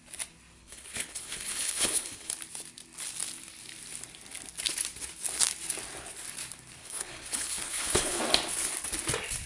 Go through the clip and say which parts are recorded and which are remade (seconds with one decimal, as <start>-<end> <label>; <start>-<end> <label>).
0.0-0.6 recorded; 0.6-2.3 remade; 2.3-6.8 recorded; 6.8-8.2 remade; 8.2-9.5 recorded